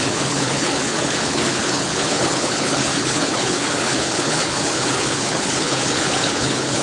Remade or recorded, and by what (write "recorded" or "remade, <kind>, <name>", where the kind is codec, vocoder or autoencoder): remade, codec, HILCodec